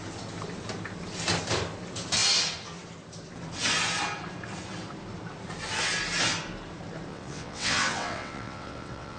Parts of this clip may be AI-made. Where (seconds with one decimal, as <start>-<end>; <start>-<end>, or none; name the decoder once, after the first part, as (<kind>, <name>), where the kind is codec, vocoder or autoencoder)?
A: 7.1-9.2 (vocoder, WaveNeXt)